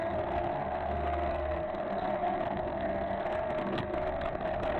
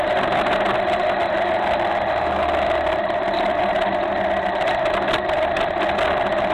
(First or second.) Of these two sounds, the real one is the second